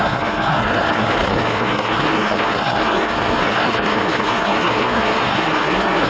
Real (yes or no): no